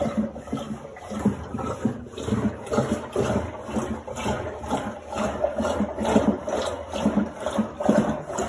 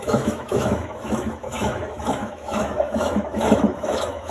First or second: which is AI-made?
second